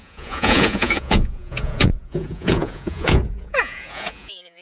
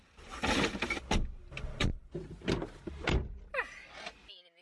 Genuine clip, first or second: second